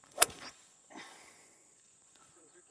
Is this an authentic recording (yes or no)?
no